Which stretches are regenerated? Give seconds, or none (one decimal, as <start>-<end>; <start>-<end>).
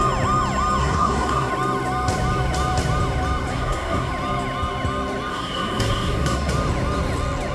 0.8-1.5; 3.5-4.1; 5.3-6.5